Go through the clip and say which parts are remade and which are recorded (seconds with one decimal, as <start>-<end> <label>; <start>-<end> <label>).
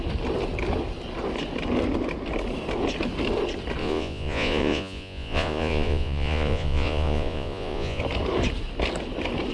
0.0-3.8 recorded; 3.8-8.0 remade; 8.0-9.5 recorded